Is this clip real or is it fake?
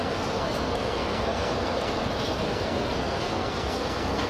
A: fake